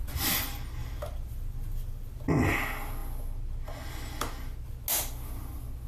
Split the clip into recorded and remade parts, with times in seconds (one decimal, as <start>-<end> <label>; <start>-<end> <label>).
0.0-0.8 recorded; 0.8-2.3 remade; 2.3-5.9 recorded